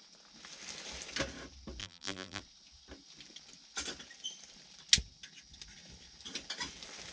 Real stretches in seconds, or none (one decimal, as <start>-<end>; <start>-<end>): 0.0-1.8; 2.4-7.1